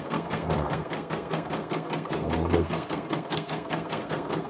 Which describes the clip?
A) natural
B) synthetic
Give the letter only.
B